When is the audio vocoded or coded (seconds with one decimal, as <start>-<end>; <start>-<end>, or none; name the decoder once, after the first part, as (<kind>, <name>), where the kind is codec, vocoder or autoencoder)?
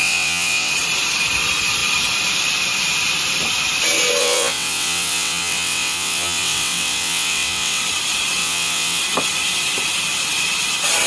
0.0-0.7 (vocoder, WaveNeXt); 4.2-7.8; 8.4-9.0